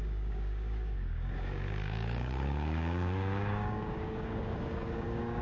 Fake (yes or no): yes